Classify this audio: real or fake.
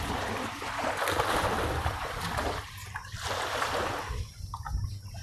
real